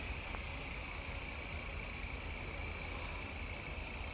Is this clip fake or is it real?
real